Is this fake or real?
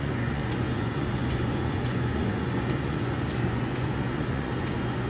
fake